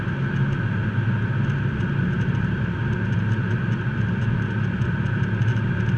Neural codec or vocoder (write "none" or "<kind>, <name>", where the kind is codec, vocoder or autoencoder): none